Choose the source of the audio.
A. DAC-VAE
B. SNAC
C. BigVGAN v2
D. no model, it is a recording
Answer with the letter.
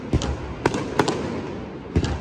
D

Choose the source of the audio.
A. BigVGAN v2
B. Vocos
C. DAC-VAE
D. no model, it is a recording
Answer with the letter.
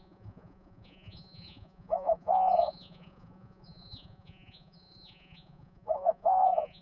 B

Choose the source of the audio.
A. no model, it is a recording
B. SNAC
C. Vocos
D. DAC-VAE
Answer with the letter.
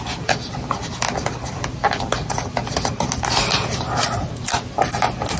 A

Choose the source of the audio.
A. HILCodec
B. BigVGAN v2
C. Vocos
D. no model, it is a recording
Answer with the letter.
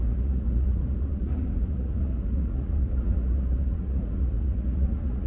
C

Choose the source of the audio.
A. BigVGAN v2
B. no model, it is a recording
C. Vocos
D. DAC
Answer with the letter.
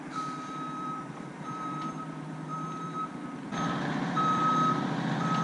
A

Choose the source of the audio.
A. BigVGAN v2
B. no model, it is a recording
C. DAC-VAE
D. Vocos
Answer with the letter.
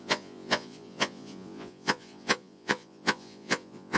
D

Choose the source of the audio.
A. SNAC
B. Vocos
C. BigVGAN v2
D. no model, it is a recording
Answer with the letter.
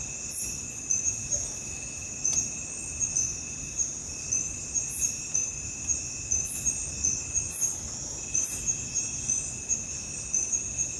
D